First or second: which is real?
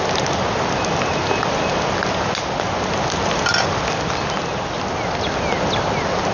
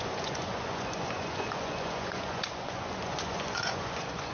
first